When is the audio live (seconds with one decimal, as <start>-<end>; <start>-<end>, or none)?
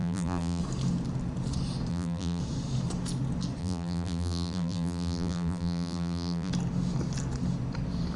0.6-1.9; 2.4-3.6; 6.5-8.2